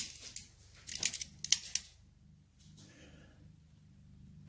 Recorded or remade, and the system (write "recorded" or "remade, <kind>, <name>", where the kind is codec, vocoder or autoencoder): recorded